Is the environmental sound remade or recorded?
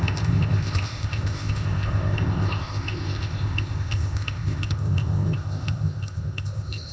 remade